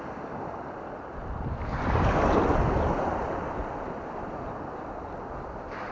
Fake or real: real